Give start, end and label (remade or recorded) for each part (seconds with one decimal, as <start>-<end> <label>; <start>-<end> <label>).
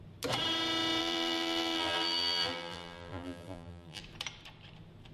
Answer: 0.0-1.0 recorded; 1.0-4.0 remade; 4.0-5.1 recorded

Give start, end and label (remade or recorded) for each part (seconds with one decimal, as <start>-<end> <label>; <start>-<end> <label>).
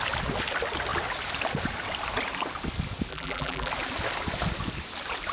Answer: 0.0-3.1 recorded; 3.1-3.7 remade; 3.7-5.3 recorded